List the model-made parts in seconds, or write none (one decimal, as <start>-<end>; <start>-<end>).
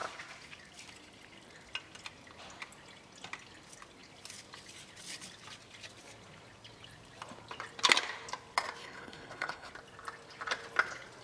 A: 8.8-9.7